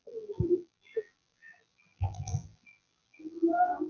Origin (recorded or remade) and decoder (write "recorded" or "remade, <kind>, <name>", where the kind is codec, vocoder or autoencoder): remade, vocoder, BigVGAN v2